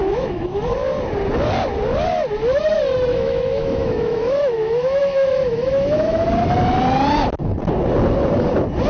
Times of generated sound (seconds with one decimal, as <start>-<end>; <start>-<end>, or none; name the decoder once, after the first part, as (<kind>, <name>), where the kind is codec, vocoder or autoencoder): 0.0-0.6 (autoencoder, DAC-VAE); 3.1-6.3